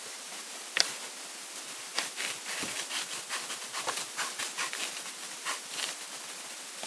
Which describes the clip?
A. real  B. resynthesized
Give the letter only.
A